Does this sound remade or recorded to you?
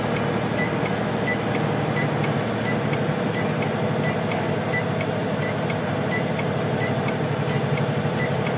recorded